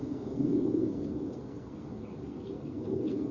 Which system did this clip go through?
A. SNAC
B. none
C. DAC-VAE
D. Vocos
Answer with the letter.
A